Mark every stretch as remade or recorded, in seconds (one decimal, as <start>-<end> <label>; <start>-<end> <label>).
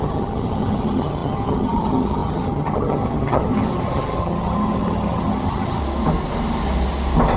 0.0-5.8 remade; 5.8-7.4 recorded